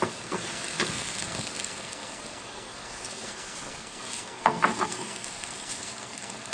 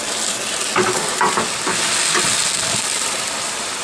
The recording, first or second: second